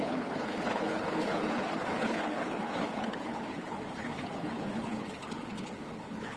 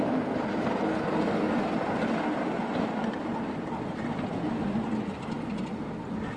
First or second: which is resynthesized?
first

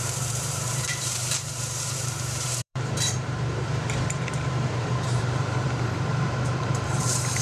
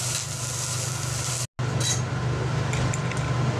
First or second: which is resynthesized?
first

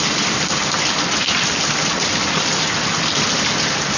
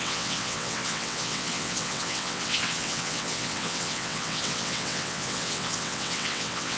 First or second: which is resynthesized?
second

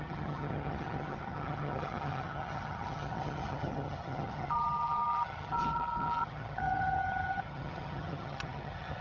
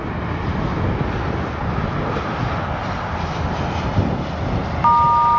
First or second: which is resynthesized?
first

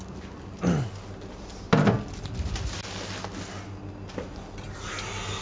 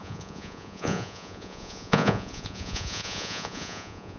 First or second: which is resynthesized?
second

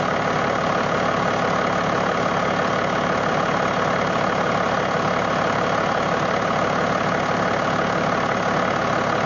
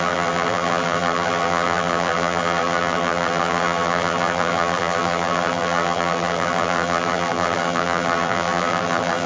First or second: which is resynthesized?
second